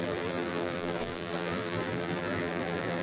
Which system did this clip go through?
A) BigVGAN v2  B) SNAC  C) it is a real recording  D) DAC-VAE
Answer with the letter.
A